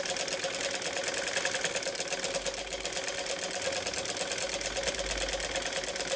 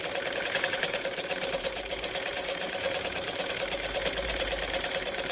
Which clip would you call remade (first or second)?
second